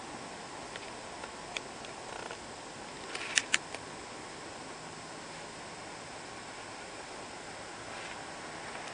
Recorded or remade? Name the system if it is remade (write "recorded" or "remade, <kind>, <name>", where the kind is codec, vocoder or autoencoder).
recorded